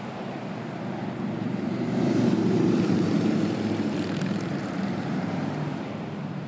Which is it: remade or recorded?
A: remade